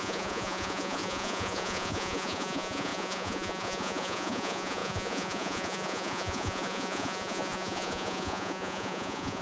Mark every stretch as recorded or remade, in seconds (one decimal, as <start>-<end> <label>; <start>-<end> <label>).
0.0-9.4 remade